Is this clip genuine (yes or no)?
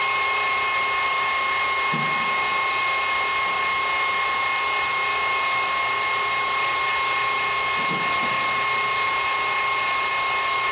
yes